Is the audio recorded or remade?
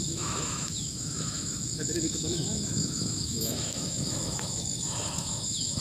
remade